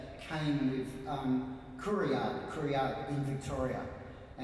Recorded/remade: recorded